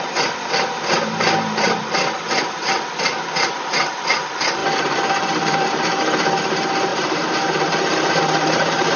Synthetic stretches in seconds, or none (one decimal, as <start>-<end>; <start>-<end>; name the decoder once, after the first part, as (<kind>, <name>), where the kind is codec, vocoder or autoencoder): 4.6-6.0 (vocoder, BigVGAN v2); 6.9-9.0